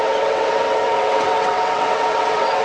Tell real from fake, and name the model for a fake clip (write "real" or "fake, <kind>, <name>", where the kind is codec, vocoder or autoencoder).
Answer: fake, vocoder, WaveNeXt